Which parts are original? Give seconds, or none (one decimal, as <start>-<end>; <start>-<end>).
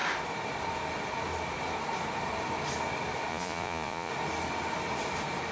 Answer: 0.0-3.3; 4.1-5.5